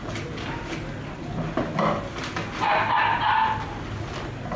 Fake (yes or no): no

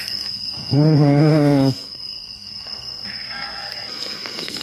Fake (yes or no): yes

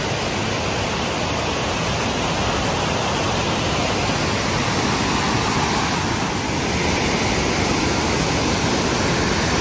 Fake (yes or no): no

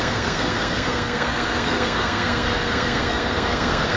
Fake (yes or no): yes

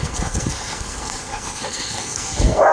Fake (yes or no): yes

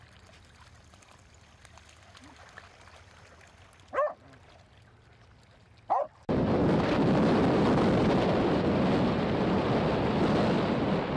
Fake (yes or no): no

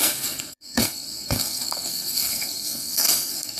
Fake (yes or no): yes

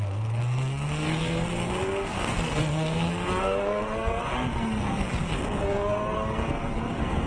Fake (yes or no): yes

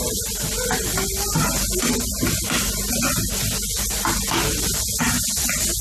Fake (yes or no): no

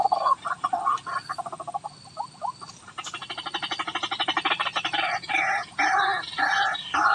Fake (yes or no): no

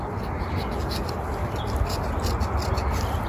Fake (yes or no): no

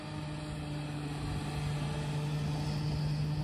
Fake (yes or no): no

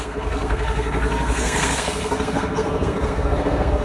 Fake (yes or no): yes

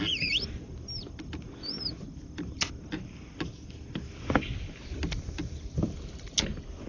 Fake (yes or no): no